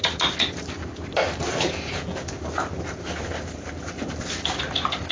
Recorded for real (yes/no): yes